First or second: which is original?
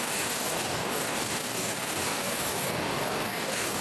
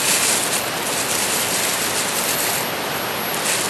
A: second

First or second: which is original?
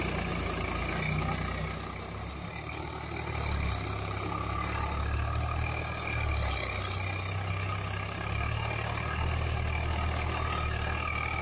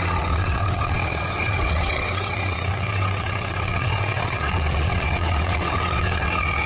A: first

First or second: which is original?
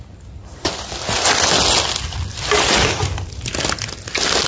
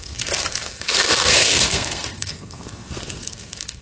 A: first